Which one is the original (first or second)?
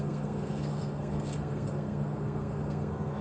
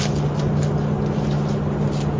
second